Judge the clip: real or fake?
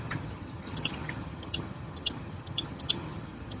fake